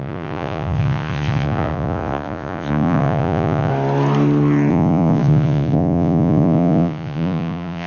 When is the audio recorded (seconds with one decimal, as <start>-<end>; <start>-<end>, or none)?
3.7-4.7